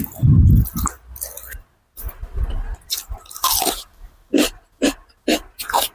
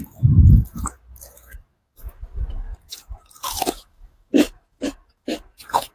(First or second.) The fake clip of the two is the second